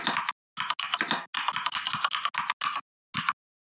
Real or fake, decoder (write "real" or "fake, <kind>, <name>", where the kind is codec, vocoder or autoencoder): real